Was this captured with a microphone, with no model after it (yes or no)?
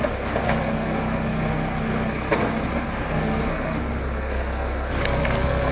no